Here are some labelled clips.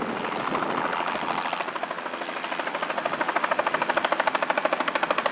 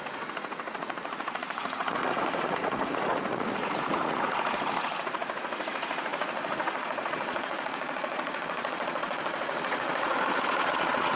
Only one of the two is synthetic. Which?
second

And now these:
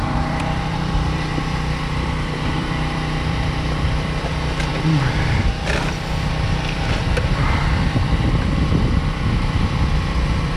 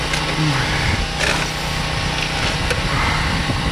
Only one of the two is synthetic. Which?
first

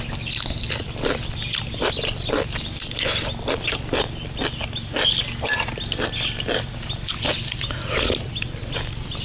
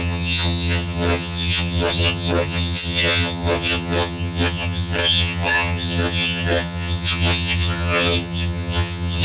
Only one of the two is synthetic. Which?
second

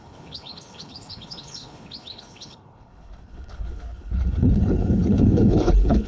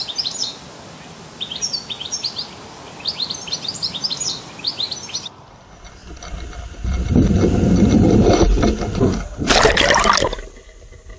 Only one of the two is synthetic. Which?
first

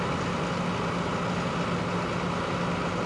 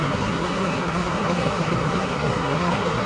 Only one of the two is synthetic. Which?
second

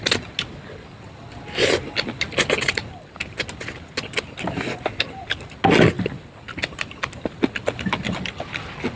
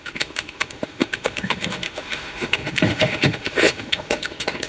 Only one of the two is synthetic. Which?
second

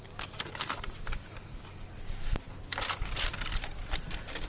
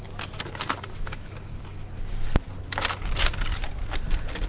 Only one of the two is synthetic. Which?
first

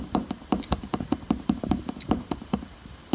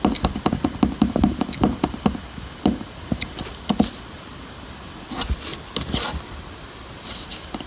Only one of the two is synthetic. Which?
first